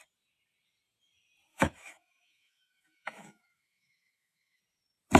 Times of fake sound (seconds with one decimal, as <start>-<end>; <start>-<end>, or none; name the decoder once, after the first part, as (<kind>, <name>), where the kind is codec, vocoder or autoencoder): 1.5-4.6 (autoencoder, DAC-VAE)